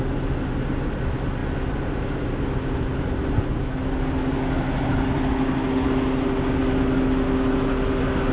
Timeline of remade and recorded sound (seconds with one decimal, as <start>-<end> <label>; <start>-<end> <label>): 0.0-8.3 recorded